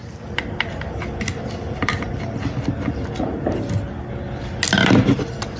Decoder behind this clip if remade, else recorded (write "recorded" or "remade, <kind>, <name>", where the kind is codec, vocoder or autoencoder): recorded